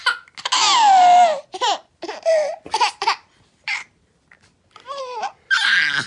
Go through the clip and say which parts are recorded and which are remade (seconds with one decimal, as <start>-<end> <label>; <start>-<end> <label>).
0.0-1.3 recorded; 1.3-5.0 remade; 5.0-6.1 recorded